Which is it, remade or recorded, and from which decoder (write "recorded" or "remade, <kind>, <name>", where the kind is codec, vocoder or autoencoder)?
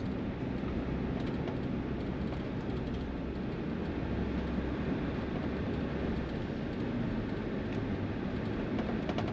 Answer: recorded